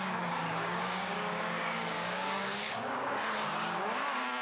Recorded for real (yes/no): no